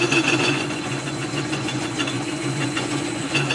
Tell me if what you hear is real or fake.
fake